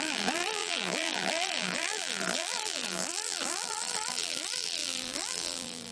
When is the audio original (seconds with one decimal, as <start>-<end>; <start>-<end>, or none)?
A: none